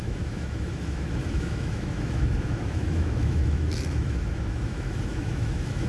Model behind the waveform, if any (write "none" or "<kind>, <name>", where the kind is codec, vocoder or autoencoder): autoencoder, DAC-VAE